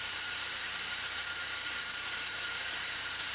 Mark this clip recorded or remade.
remade